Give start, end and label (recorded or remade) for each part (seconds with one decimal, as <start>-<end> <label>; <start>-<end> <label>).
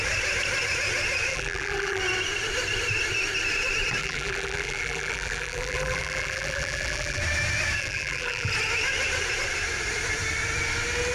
0.0-1.3 recorded; 1.3-2.0 remade; 2.0-4.0 recorded; 4.0-7.2 remade; 7.2-7.8 recorded; 7.8-8.5 remade; 8.5-11.1 recorded